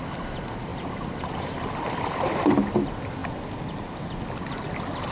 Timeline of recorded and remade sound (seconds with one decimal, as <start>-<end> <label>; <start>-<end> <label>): 0.0-0.7 recorded; 0.7-2.4 remade; 2.4-5.1 recorded